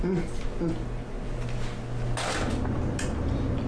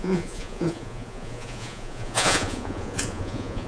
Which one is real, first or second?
first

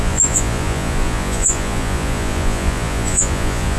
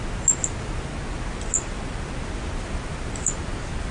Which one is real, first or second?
second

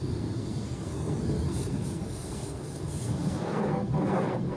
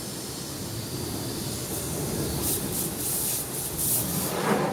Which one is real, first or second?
second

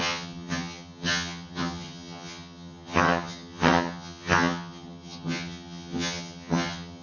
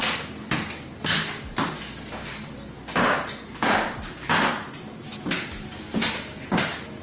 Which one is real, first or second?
second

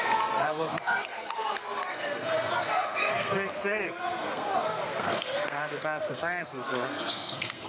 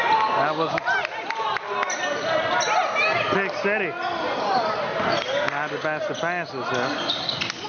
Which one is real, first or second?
second